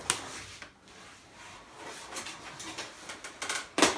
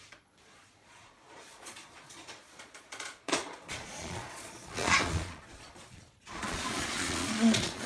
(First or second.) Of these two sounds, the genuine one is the first